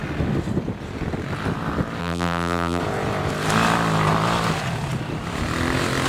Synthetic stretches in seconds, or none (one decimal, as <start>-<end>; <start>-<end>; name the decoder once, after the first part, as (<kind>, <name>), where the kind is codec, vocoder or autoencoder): 2.0-2.8 (vocoder, BigVGAN v2)